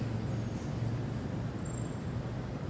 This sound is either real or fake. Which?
real